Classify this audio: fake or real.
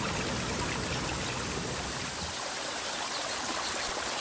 real